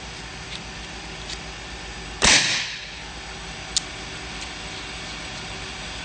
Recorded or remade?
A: recorded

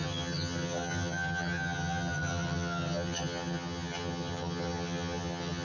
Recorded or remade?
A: remade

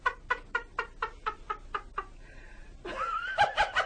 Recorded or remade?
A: recorded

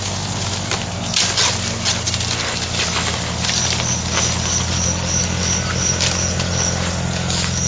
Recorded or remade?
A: recorded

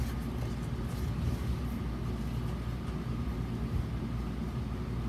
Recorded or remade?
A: recorded